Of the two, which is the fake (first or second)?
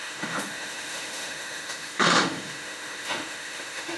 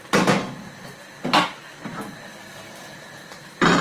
first